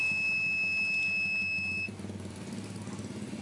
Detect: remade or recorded recorded